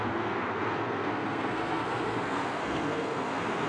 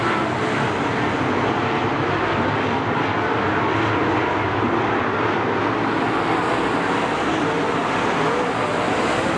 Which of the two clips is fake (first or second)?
first